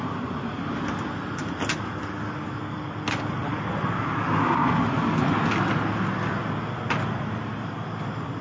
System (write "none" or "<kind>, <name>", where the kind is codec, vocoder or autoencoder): none